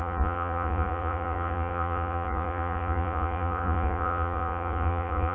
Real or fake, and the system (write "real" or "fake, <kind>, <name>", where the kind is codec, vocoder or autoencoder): fake, vocoder, Vocos